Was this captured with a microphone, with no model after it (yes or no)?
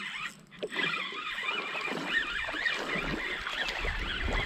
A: yes